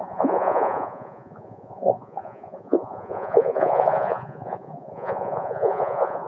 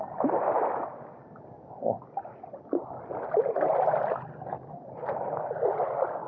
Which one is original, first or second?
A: second